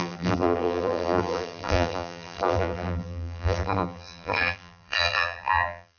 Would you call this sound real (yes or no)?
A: no